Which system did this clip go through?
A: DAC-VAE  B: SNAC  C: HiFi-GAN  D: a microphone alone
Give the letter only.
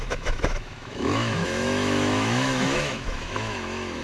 A